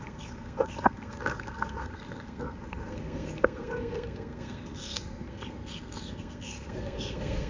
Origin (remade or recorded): remade